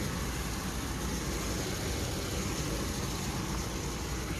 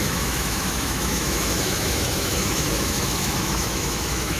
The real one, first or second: first